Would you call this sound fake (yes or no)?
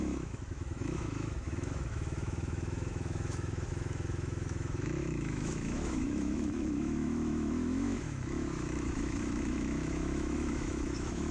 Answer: yes